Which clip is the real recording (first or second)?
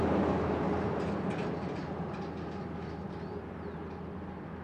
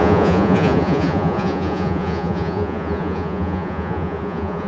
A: first